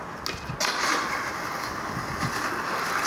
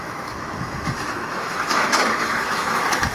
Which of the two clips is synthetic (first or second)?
second